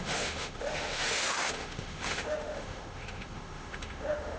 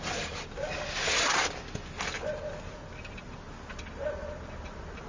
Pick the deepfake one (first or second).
first